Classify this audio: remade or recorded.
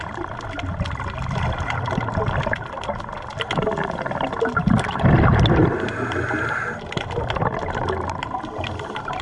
recorded